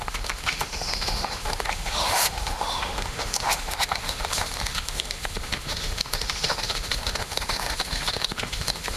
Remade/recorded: remade